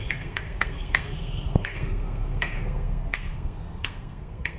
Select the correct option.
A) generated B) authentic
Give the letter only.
A